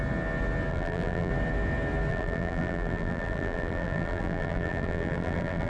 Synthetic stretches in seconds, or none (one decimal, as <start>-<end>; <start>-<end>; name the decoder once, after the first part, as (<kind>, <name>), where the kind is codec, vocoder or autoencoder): 0.7-1.3 (vocoder, BigVGAN v2); 2.1-5.7